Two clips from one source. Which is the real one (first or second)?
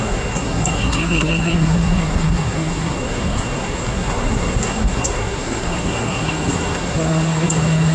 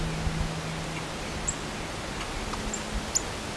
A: second